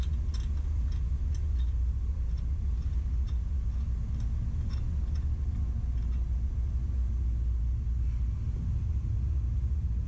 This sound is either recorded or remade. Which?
recorded